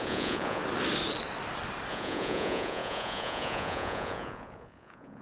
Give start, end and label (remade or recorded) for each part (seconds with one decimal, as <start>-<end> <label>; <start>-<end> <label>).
0.0-0.6 remade; 0.6-1.9 recorded; 1.9-5.2 remade

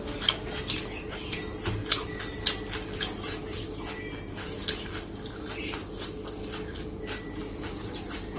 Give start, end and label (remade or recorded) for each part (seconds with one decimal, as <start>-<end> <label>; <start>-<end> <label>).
0.0-8.4 recorded

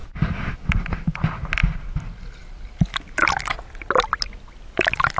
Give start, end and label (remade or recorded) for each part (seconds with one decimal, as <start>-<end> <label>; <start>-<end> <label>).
0.0-5.2 recorded

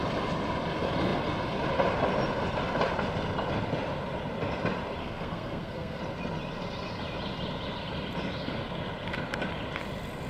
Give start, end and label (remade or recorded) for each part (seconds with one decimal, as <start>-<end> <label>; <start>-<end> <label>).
0.0-5.0 recorded; 5.0-6.0 remade; 6.0-10.3 recorded

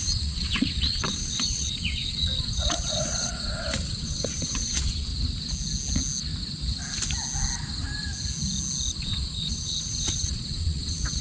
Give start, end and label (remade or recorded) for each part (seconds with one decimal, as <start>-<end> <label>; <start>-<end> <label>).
0.0-5.1 remade; 5.1-9.0 recorded; 9.0-11.2 remade

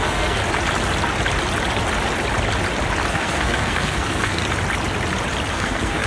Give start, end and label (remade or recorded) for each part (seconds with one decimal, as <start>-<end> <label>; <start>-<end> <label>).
0.0-0.4 remade; 0.4-3.1 recorded; 3.1-4.4 remade; 4.4-5.5 recorded; 5.5-6.1 remade

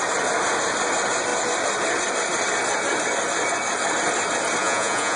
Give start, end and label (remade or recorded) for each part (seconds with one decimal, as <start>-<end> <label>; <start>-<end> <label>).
0.0-4.6 recorded; 4.6-5.2 remade